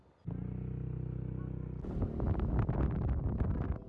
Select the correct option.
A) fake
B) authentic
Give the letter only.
B